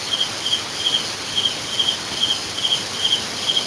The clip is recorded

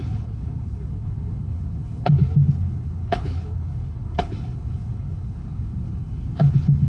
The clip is remade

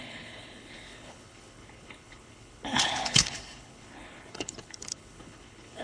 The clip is remade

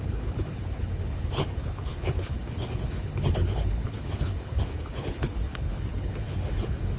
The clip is remade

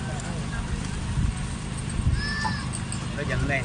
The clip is recorded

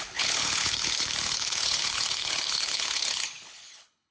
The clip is remade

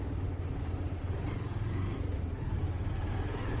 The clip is recorded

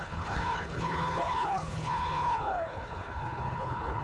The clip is remade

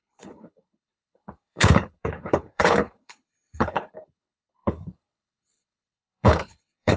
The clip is remade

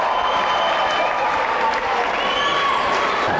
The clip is recorded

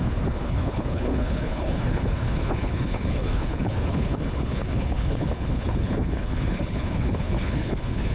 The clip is remade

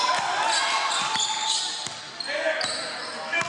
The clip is recorded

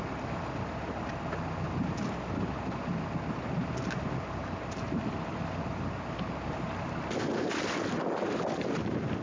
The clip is recorded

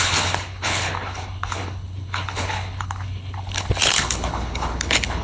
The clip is remade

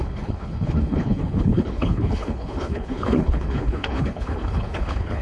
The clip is remade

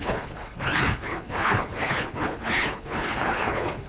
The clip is remade